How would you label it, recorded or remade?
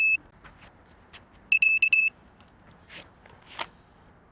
recorded